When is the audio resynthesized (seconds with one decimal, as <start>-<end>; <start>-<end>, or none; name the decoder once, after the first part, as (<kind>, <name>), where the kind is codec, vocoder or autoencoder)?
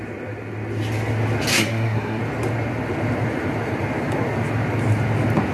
1.5-2.2 (codec, SNAC)